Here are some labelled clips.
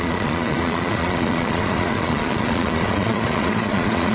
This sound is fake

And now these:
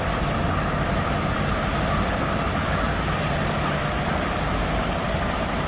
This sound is real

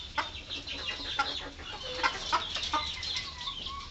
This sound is real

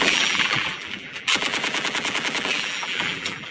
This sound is fake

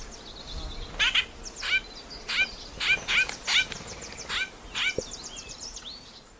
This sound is real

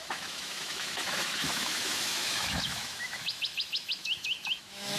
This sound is fake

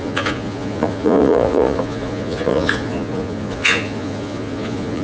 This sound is fake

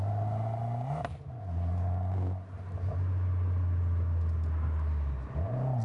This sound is real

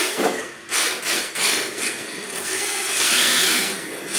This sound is fake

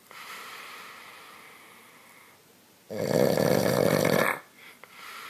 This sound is real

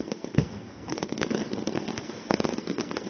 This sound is fake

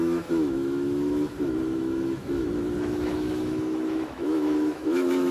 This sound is fake